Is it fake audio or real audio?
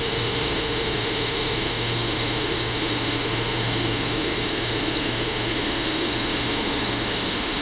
fake